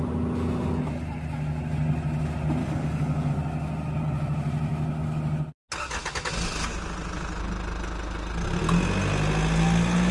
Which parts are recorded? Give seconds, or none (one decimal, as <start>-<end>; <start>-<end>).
0.0-2.6; 3.3-10.1